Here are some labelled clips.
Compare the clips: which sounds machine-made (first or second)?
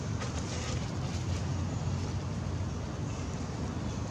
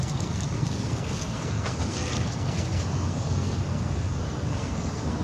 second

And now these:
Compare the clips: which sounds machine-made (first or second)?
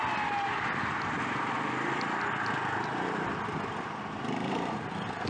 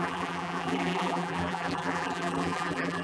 second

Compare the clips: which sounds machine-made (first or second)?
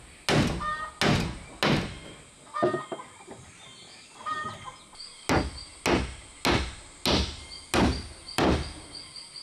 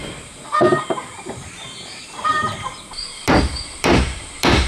second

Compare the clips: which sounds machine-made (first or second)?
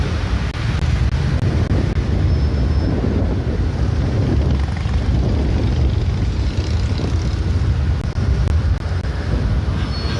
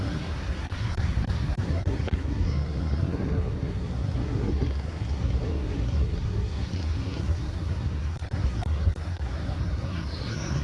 second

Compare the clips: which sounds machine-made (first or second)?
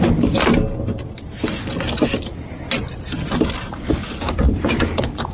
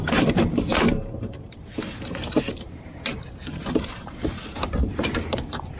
second